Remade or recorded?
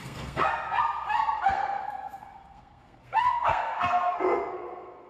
remade